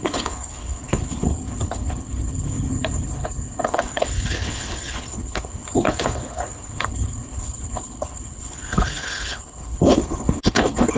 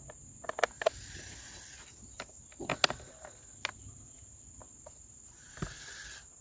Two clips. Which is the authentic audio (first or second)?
second